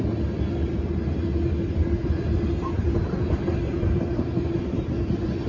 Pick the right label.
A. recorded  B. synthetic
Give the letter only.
A